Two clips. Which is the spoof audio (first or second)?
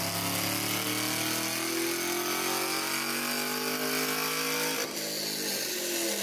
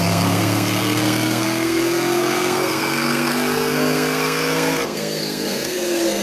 second